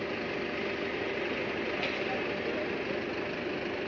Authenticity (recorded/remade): recorded